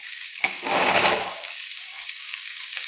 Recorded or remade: remade